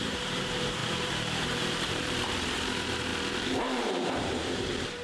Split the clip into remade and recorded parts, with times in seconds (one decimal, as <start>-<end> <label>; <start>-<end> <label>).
0.0-5.0 remade